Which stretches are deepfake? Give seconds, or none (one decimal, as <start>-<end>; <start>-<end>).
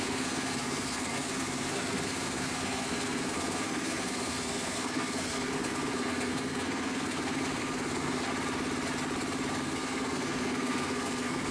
0.0-8.2; 9.6-11.5